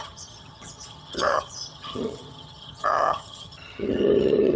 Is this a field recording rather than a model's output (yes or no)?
no